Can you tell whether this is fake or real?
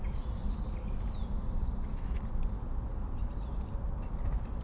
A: real